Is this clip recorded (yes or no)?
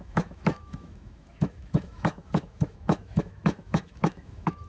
no